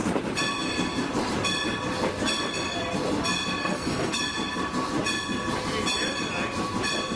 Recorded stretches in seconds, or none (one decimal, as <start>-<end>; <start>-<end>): 0.0-3.6; 4.2-7.2